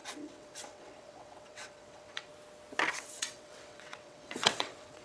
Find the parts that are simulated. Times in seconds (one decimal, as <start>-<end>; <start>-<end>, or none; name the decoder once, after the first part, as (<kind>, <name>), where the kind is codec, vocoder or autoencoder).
0.0-2.3 (vocoder, WaveNeXt); 2.9-5.0